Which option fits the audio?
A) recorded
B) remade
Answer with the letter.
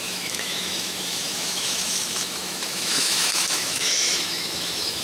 B